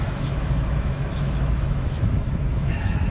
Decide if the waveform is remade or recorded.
remade